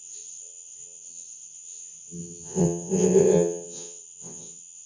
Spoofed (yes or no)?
yes